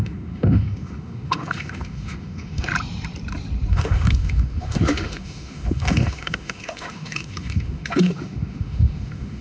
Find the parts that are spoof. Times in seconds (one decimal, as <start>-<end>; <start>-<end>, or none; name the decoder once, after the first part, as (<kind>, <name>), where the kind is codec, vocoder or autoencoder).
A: 0.0-2.7 (autoencoder, DAC-VAE); 3.7-9.4